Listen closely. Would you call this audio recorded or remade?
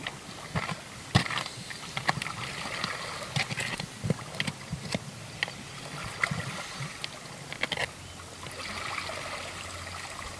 recorded